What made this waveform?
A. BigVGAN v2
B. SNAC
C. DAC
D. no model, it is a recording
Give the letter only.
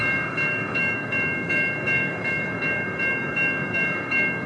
C